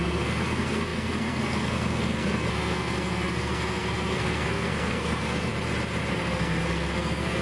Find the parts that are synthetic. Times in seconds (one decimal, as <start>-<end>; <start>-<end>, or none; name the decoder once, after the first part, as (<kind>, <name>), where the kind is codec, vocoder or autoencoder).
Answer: 0.0-5.5 (codec, SNAC); 6.1-7.4